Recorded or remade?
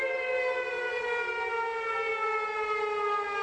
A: recorded